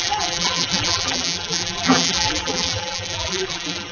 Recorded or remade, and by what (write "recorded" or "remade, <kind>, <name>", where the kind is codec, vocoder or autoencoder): remade, vocoder, BigVGAN v2